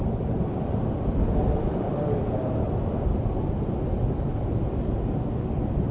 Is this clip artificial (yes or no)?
no